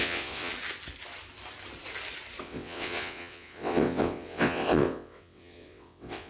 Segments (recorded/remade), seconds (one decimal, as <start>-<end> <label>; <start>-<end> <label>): 0.0-0.5 remade; 0.5-2.4 recorded; 2.4-6.3 remade